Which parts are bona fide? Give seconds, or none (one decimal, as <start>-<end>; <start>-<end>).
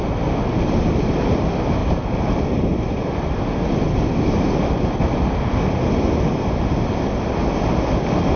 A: 1.8-6.3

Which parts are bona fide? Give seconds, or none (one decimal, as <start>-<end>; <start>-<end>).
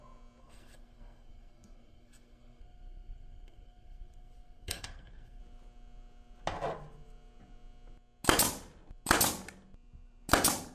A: 0.0-0.4; 5.4-10.7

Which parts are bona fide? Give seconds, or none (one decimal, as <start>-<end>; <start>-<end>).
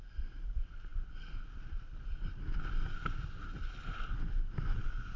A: 0.0-5.2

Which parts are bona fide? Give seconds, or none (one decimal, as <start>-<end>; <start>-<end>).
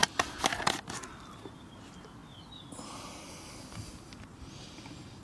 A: 0.0-5.2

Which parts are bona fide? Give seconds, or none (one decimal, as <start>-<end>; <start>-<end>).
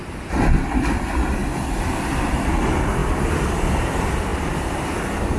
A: 0.0-1.4; 2.2-3.0; 3.8-4.3; 4.8-5.4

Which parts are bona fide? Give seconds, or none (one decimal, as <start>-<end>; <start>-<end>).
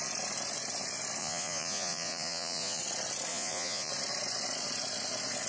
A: 0.0-1.2; 2.8-3.3; 3.9-5.5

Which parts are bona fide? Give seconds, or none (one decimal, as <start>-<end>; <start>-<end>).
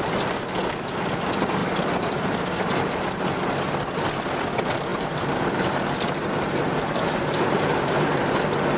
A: 0.0-1.6; 3.2-4.9; 8.2-8.8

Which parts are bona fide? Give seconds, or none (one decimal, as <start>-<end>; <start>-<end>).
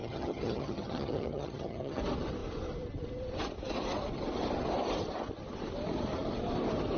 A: 2.0-7.0